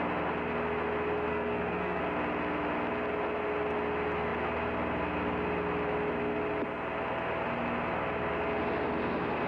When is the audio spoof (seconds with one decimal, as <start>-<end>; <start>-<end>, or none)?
1.3-2.0

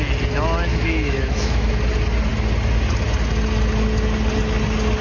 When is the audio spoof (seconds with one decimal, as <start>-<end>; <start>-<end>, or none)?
0.7-1.7

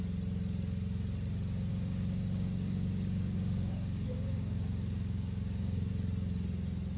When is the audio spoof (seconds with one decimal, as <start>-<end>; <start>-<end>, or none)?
1.7-5.9

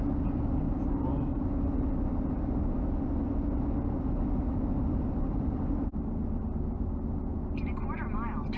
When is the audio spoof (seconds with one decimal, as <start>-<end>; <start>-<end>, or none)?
none

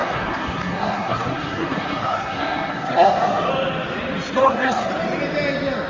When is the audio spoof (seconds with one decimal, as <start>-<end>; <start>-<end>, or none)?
0.0-3.5; 4.4-4.9

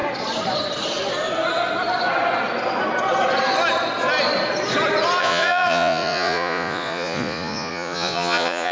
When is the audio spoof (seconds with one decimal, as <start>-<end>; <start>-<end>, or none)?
5.2-8.7

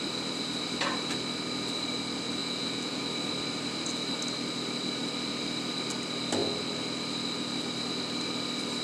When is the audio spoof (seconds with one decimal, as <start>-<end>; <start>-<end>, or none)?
2.4-3.0

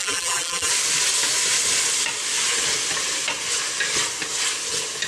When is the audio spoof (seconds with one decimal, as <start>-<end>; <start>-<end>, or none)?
0.0-0.7